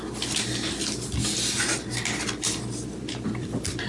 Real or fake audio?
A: real